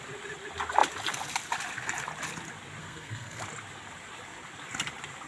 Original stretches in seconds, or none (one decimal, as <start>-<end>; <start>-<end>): 0.0-2.8; 3.4-5.3